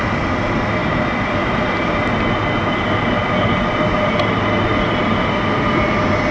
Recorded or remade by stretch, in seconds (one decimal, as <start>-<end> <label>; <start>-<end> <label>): 0.0-6.3 recorded